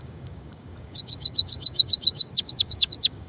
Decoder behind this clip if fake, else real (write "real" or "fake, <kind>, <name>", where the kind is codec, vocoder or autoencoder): fake, codec, DAC